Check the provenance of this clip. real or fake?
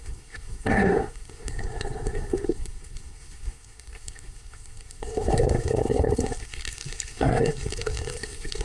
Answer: fake